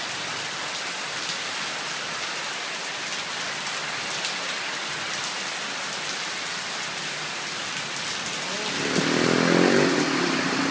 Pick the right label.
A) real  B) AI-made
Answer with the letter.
A